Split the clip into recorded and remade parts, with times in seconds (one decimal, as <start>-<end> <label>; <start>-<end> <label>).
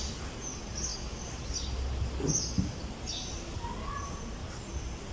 0.0-5.1 recorded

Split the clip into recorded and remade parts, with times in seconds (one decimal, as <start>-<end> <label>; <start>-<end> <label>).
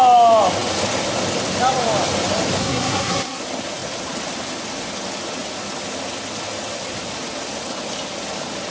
0.0-2.6 recorded; 2.6-3.4 remade; 3.4-8.7 recorded